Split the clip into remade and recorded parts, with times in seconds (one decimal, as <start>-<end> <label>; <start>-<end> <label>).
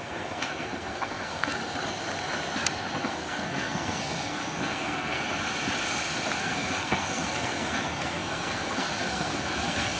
0.0-1.6 remade; 1.6-3.0 recorded; 3.0-5.2 remade; 5.2-6.4 recorded; 6.4-10.0 remade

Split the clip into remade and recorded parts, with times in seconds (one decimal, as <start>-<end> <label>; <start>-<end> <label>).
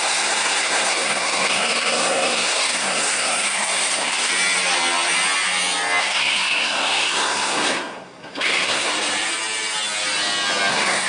0.0-4.3 remade; 4.3-6.0 recorded; 6.0-8.9 remade; 8.9-10.7 recorded; 10.7-11.1 remade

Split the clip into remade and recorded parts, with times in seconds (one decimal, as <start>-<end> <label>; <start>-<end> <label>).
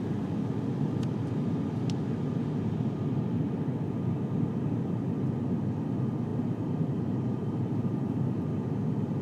0.0-6.3 recorded; 6.3-8.4 remade; 8.4-9.2 recorded